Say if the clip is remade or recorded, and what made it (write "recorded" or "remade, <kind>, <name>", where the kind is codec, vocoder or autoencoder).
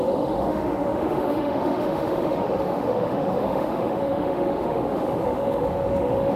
remade, autoencoder, DAC-VAE